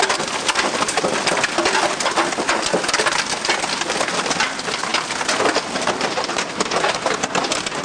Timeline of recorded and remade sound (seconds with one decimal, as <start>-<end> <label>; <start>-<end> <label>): 0.0-7.8 recorded